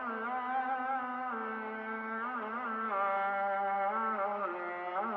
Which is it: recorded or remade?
recorded